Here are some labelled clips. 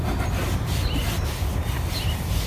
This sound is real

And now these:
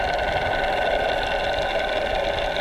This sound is real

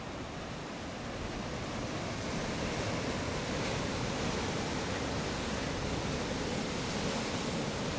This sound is real